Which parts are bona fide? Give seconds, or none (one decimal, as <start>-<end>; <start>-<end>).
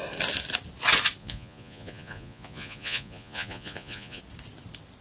0.0-1.2; 4.2-5.0